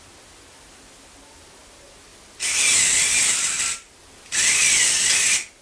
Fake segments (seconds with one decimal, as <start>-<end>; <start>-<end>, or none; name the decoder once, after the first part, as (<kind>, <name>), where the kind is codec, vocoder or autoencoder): none